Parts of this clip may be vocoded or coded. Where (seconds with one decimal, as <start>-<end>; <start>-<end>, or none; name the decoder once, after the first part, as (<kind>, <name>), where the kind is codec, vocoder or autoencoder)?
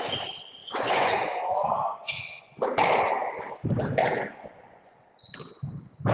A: 0.6-2.5 (vocoder, Vocos); 4.0-5.0